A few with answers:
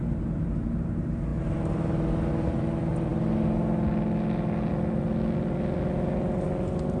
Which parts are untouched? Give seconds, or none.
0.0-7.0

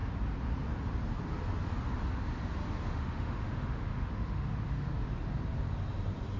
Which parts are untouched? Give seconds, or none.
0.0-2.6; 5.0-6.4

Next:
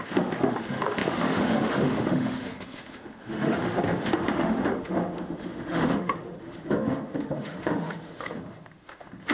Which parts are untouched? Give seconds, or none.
none

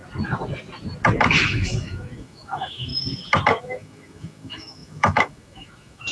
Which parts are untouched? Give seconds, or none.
0.0-1.5; 2.9-3.6

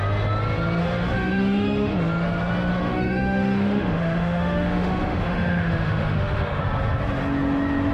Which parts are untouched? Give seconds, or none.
0.0-0.8; 2.0-2.7; 6.6-7.9